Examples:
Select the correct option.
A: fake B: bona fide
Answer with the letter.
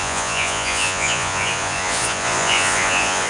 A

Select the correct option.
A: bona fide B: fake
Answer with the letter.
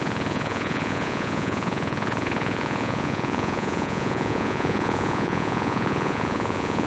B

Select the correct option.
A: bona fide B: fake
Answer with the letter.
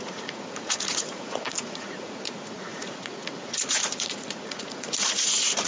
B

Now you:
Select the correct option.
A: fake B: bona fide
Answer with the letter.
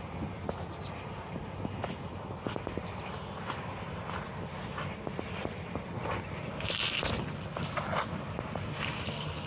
B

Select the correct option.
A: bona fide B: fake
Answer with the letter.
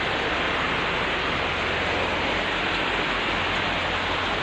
A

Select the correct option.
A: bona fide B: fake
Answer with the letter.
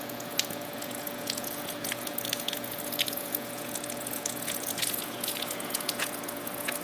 B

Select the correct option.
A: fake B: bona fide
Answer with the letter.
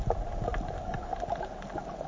B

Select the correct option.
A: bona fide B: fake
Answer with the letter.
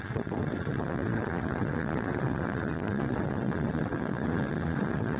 B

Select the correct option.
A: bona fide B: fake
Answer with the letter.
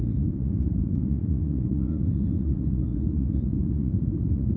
B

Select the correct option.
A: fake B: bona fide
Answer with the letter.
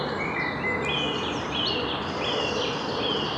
B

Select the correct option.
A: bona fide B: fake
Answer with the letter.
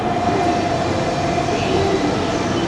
A